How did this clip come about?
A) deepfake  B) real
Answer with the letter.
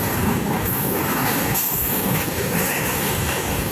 A